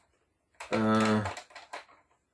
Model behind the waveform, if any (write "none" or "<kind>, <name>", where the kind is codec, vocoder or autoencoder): none